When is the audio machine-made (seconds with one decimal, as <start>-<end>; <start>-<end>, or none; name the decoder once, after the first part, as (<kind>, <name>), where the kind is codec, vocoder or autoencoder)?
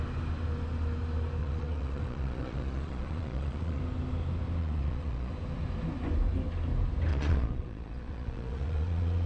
1.4-3.8 (vocoder, Vocos); 4.6-5.3; 7.1-9.3